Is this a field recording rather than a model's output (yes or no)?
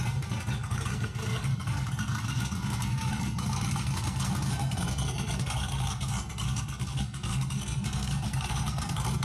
no